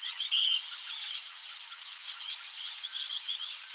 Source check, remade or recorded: remade